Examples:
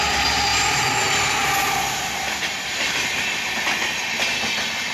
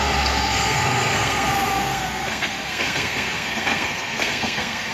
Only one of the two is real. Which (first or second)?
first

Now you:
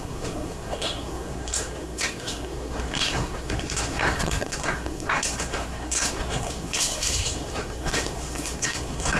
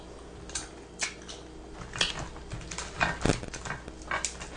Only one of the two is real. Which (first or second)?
second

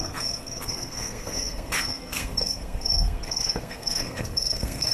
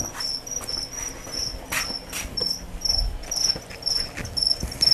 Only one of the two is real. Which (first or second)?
second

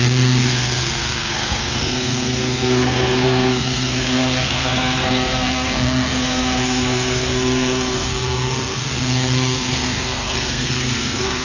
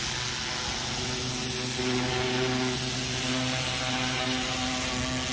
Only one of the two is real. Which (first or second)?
second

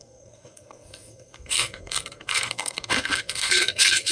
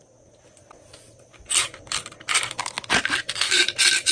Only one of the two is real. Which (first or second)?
second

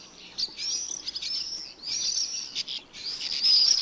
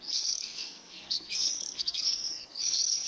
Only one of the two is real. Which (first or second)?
first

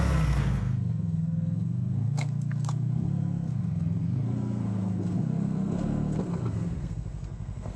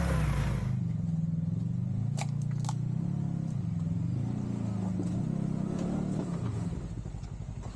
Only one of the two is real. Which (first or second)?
second